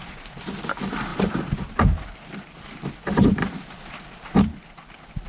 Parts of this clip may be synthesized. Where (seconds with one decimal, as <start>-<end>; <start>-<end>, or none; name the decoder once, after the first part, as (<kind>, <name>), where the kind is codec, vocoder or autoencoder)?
none